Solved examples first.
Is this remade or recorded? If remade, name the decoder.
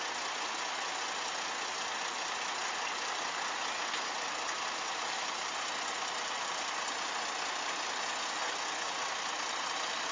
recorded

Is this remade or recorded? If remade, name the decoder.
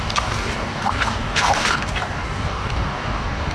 remade, codec, DAC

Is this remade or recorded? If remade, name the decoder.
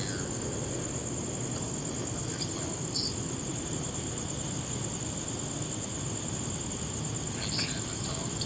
recorded